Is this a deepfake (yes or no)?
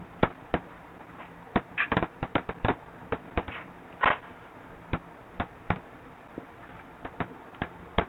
yes